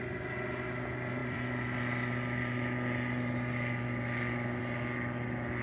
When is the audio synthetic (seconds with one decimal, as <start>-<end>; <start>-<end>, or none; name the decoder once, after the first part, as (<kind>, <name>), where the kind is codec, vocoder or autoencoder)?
1.2-4.6 (vocoder, BigVGAN v2)